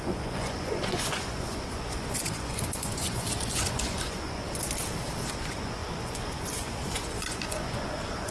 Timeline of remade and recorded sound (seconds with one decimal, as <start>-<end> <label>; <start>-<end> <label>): 0.0-4.4 remade; 4.4-5.3 recorded; 5.3-8.3 remade